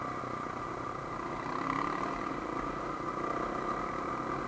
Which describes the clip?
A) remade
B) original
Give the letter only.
B